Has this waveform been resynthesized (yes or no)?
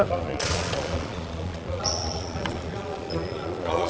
yes